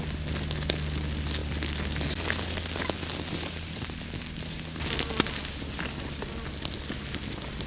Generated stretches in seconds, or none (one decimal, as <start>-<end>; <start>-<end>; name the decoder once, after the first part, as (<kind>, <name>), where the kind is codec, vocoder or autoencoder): none